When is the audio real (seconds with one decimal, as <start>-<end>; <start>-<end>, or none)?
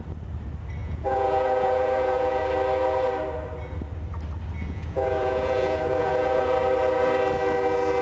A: 0.0-0.8; 2.4-4.6; 6.5-8.0